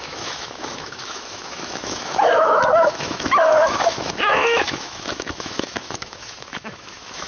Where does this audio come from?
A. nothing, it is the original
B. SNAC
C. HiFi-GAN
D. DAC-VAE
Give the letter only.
D